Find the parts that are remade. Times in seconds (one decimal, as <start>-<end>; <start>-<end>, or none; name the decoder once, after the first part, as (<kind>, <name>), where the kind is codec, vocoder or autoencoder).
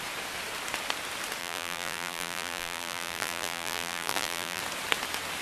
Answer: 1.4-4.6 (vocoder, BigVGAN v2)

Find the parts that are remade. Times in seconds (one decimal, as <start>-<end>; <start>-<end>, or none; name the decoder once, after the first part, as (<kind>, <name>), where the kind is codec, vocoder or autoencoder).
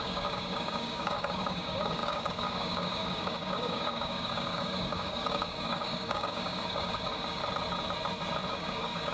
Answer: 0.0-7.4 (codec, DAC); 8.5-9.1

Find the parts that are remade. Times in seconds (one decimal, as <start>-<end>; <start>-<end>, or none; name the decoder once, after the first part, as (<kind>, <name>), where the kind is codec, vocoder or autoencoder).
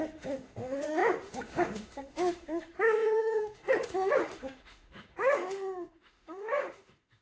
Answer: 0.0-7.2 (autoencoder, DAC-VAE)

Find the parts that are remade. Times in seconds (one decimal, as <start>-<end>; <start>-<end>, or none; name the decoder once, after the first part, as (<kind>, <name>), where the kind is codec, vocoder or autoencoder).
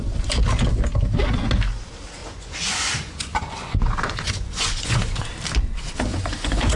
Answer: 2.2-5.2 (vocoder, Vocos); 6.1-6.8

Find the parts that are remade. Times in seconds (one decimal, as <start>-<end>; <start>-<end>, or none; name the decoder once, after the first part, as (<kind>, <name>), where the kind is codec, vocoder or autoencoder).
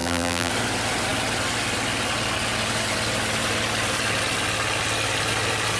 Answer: 0.0-0.5 (vocoder, BigVGAN v2)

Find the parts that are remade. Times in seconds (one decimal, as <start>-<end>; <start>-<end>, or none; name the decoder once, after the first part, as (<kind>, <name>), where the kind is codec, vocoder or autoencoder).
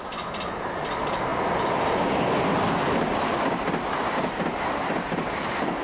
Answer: none